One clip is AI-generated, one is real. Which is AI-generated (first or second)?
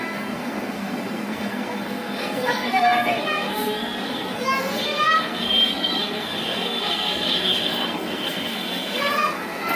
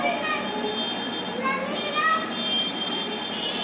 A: first